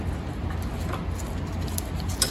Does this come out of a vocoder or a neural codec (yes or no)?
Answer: yes